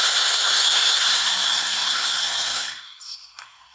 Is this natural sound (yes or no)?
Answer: no